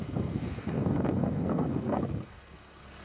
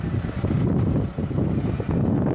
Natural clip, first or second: second